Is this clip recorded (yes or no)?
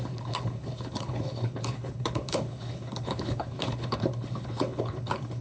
no